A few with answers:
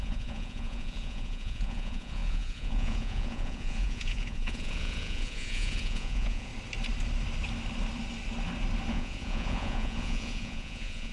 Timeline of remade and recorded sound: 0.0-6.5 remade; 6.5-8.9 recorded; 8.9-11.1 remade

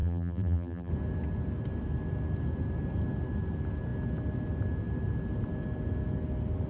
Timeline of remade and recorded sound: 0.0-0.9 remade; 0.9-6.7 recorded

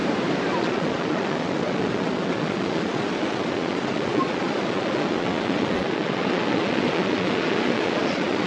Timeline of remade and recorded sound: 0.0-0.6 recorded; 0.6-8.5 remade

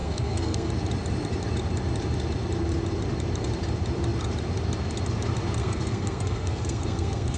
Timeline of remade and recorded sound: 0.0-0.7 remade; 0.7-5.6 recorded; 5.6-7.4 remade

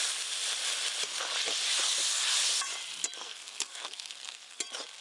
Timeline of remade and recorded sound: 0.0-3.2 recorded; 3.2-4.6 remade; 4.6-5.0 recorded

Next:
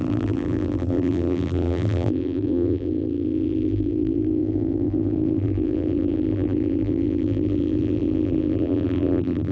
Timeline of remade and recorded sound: 0.0-9.5 remade

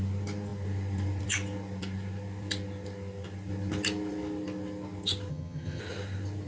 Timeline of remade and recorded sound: 0.0-5.3 recorded; 5.3-5.8 remade; 5.8-6.5 recorded